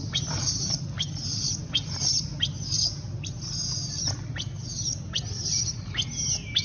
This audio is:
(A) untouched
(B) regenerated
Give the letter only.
A